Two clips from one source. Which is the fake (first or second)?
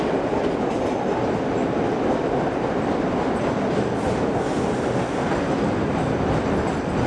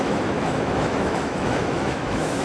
second